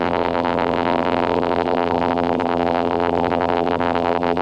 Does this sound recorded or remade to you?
remade